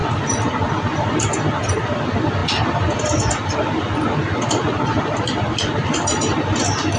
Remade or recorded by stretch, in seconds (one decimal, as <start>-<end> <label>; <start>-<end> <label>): 0.0-7.0 recorded